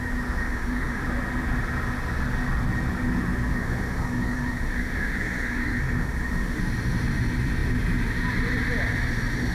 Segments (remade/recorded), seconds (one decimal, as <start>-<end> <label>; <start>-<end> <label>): 0.0-0.4 recorded; 0.4-1.0 remade; 1.0-3.5 recorded; 3.5-6.6 remade; 6.6-9.5 recorded